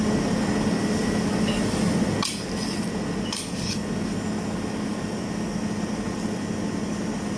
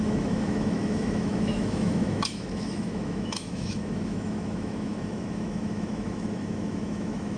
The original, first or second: first